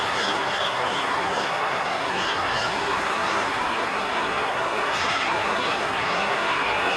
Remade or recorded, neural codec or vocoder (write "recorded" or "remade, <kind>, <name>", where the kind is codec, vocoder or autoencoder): remade, codec, SNAC